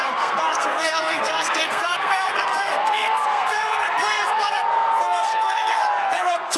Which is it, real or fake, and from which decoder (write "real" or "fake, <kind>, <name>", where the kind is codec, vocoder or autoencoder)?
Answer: fake, codec, SNAC